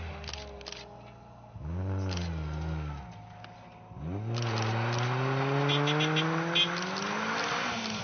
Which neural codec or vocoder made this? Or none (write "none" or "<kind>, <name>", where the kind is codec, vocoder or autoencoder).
none